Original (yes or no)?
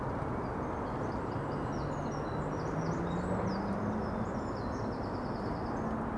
yes